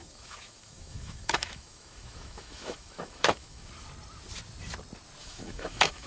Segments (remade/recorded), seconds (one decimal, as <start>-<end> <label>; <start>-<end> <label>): 0.0-3.7 remade; 3.7-5.2 recorded; 5.2-6.1 remade